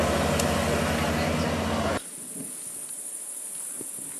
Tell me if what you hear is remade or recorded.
recorded